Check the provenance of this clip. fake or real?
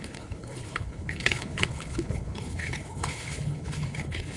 fake